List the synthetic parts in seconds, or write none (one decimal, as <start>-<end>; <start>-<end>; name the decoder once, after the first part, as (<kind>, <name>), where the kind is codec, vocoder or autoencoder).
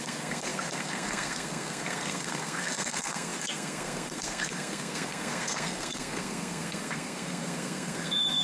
0.0-8.4 (codec, SNAC)